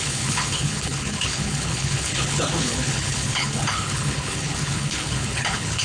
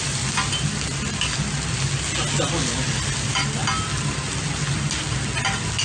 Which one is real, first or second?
second